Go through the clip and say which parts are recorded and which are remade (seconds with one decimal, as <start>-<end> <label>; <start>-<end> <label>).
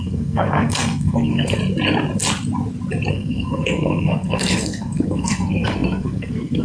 0.0-1.6 remade; 1.6-3.1 recorded; 3.1-6.6 remade